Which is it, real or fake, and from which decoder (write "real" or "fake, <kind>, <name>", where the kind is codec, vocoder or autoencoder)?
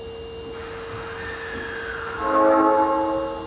real